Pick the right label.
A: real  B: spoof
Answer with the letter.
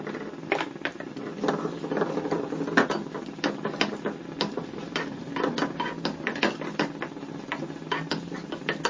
A